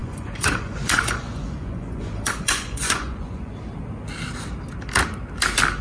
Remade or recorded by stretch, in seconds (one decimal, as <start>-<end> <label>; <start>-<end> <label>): 0.0-3.5 remade; 3.5-5.8 recorded